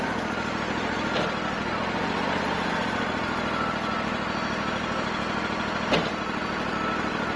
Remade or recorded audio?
recorded